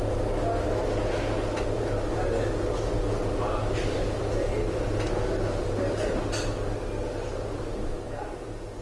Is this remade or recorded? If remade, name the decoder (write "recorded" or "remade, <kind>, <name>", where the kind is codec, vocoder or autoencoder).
recorded